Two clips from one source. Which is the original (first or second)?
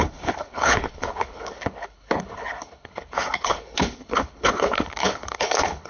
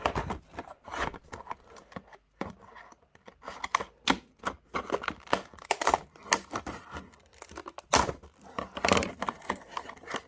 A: second